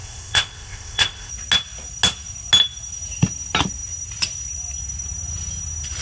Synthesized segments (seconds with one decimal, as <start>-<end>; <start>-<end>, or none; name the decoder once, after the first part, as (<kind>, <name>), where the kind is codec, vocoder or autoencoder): 0.0-1.3 (codec, ZipCodec)